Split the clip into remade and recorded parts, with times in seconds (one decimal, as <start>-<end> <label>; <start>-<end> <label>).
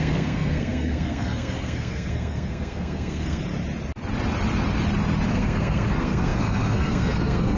0.0-3.4 remade; 3.4-5.3 recorded; 5.3-7.6 remade